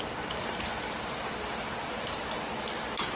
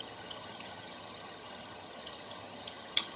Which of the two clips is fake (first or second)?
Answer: second